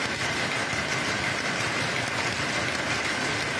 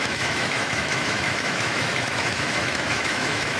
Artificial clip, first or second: second